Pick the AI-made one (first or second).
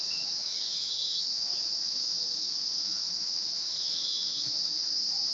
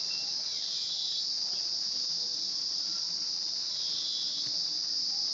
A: first